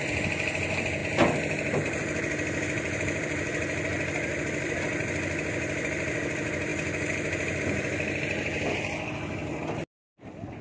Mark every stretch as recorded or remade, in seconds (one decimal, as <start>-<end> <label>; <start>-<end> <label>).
0.0-10.6 recorded